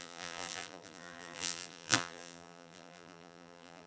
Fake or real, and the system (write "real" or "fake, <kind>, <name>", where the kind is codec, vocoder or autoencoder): fake, vocoder, BigVGAN v2